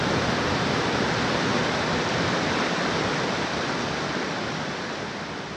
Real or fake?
real